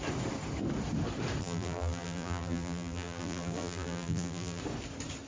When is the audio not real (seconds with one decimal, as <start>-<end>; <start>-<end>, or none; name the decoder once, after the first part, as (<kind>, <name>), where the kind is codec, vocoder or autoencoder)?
1.4-4.6 (vocoder, BigVGAN v2)